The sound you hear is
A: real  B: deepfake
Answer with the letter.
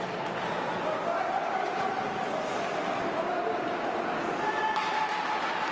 A